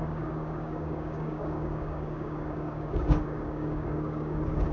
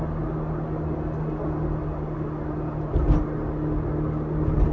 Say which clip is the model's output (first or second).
first